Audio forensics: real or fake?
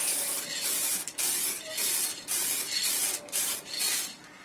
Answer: fake